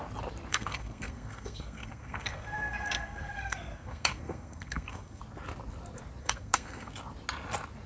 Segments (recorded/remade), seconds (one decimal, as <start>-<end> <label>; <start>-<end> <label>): 0.0-0.5 recorded; 0.5-5.2 remade; 5.2-6.2 recorded; 6.2-6.9 remade; 6.9-7.9 recorded